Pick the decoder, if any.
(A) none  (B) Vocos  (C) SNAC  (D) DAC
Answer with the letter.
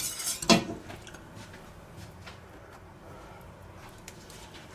A